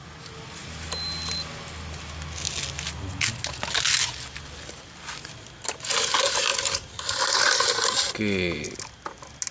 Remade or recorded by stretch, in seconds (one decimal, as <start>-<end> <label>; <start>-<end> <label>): 0.0-6.5 recorded; 6.5-7.8 remade; 7.8-9.5 recorded